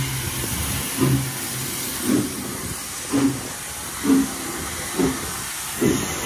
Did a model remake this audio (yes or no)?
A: no